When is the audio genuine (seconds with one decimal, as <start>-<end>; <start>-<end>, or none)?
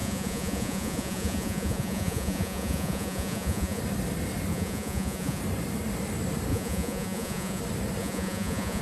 3.8-4.5; 5.4-6.5; 7.6-8.0